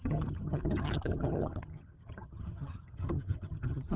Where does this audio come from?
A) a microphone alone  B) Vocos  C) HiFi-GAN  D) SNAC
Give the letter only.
C